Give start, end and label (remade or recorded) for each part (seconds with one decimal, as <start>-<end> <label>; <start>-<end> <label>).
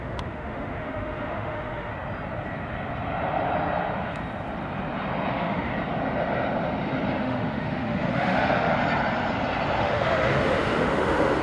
0.0-1.9 remade; 1.9-5.3 recorded; 5.3-5.7 remade; 5.7-7.2 recorded; 7.2-8.7 remade; 8.7-9.8 recorded; 9.8-11.4 remade